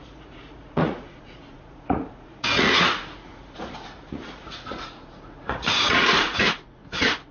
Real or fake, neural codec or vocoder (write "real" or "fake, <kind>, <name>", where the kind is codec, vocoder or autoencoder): fake, vocoder, Vocos